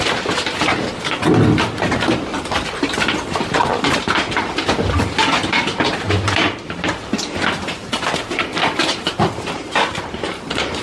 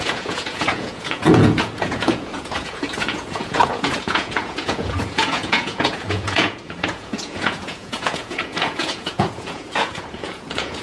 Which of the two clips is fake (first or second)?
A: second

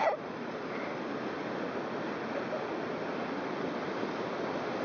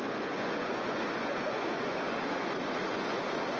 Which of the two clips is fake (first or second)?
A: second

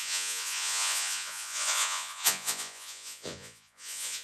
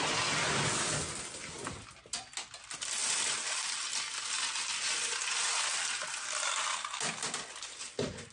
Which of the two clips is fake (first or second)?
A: first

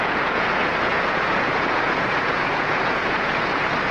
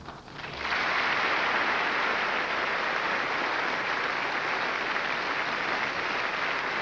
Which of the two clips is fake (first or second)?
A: first